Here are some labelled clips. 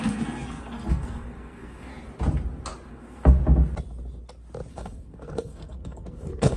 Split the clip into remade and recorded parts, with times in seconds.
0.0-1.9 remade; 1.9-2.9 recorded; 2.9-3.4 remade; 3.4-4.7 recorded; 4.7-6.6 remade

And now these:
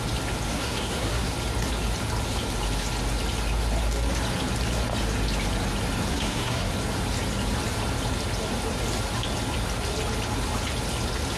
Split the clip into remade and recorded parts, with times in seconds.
0.0-0.5 recorded; 0.5-1.3 remade; 1.3-6.1 recorded; 6.1-6.7 remade; 6.7-11.4 recorded